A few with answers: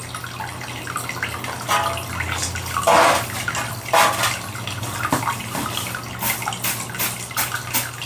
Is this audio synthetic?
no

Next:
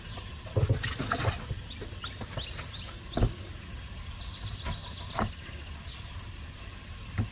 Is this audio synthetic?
no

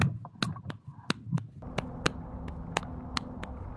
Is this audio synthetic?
no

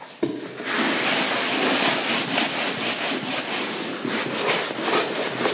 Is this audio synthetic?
no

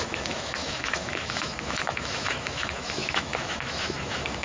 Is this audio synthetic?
yes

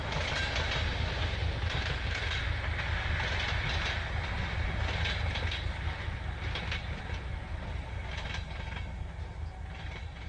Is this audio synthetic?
no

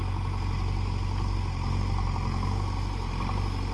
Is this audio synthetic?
no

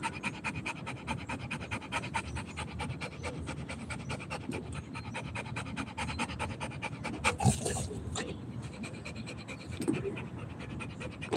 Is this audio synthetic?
no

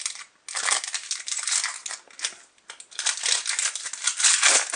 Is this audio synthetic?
no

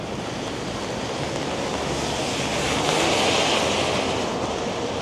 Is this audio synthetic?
no